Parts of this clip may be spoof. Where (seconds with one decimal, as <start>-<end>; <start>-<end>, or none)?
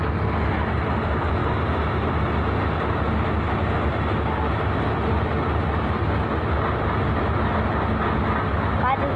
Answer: none